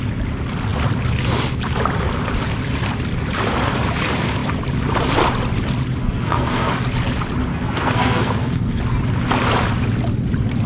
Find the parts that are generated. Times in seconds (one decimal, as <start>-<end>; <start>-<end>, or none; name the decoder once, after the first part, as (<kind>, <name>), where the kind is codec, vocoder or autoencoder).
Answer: 6.0-6.7 (codec, SNAC); 7.5-8.8